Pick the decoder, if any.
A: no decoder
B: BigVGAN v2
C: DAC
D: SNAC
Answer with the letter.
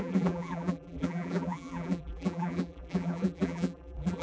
B